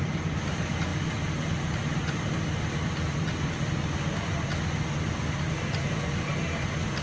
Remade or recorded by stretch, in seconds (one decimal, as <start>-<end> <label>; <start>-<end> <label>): 0.0-7.0 recorded